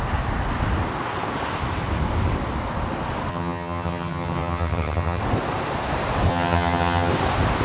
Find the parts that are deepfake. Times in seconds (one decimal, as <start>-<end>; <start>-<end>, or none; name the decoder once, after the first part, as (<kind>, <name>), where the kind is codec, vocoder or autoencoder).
3.3-5.2 (vocoder, HiFi-GAN); 6.3-7.1